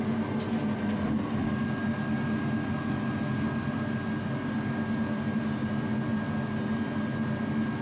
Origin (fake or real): real